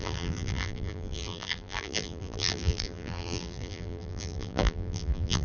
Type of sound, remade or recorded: remade